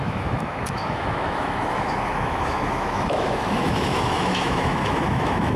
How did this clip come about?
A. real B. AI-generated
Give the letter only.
B